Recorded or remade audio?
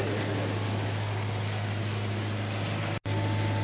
recorded